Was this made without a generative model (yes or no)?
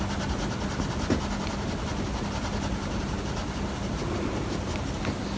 yes